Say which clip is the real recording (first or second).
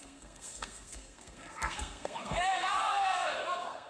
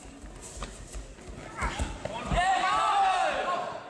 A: second